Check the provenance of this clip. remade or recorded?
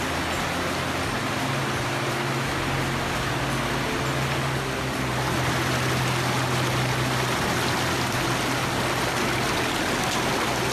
recorded